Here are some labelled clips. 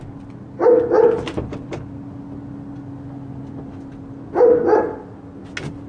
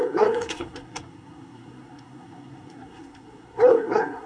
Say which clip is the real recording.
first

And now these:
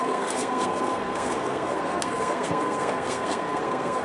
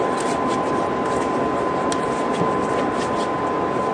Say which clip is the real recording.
second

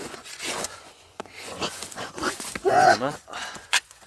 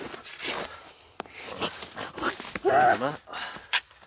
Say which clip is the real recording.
second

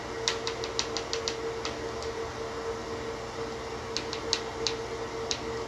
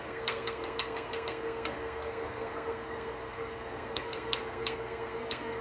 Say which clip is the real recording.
first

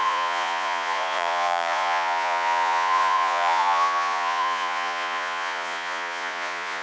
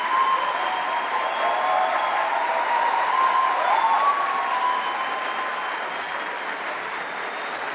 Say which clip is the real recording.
second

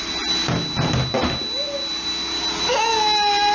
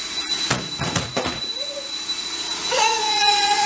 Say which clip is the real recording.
first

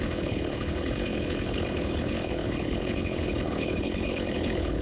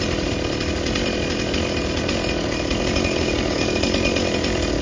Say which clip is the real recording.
second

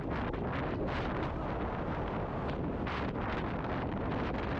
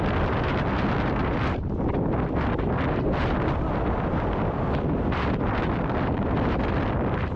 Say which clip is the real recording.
first